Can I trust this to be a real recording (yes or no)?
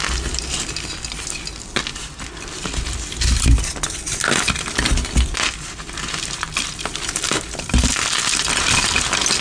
yes